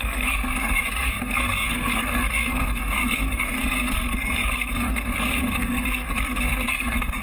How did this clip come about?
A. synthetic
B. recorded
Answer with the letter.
A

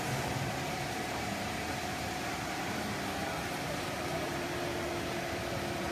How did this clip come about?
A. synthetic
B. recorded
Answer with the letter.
A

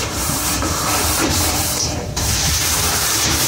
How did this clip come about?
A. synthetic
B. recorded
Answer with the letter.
A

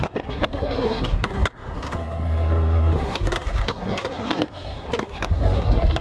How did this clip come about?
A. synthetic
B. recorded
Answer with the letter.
A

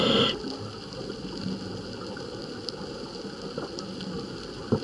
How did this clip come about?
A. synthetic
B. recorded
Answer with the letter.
B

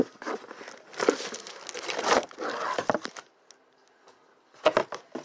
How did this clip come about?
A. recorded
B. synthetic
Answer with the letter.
A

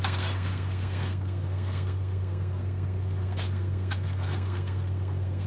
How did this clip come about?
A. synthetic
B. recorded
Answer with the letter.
A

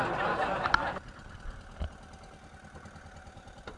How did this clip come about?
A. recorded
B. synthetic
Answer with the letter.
A